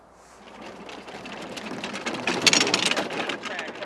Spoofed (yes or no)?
no